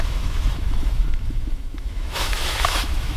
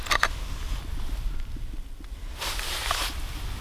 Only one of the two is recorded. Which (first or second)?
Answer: second